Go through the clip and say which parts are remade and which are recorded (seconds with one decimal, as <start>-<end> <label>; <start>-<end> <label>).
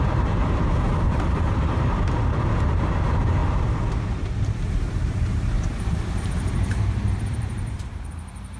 0.0-8.6 remade